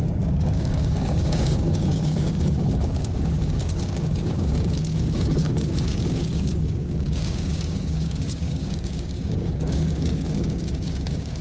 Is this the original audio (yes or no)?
no